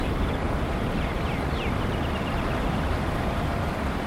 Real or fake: fake